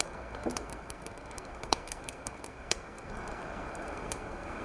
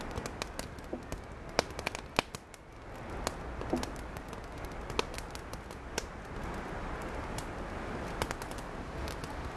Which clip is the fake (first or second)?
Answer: first